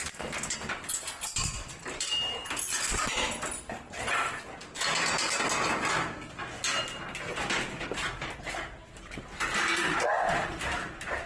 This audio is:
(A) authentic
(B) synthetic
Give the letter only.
A